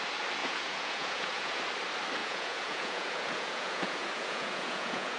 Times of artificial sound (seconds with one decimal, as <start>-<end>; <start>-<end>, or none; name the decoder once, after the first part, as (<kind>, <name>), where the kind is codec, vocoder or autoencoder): 0.4-1.6 (vocoder, Vocos); 2.2-5.2